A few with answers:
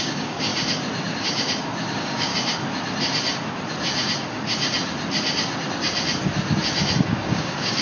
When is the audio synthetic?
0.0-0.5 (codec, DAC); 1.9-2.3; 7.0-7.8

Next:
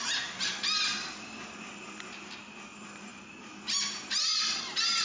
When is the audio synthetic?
none

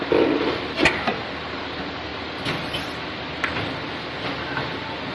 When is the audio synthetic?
none

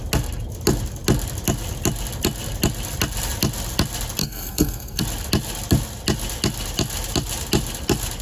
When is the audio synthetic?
4.2-5.0 (codec, SNAC)

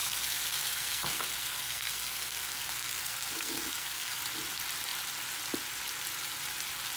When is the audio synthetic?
0.0-4.2 (codec, SNAC)

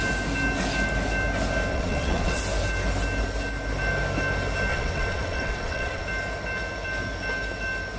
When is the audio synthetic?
1.7-2.4 (vocoder, WaveNeXt); 4.7-6.0

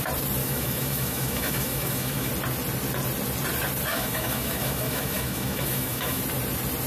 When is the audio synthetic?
0.4-2.3 (autoencoder, DAC-VAE); 3.9-6.2

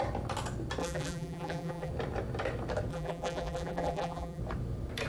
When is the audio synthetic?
0.8-1.9 (vocoder, BigVGAN v2); 2.9-4.4